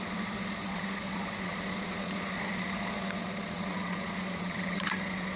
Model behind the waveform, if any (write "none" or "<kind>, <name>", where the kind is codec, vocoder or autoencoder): vocoder, Vocos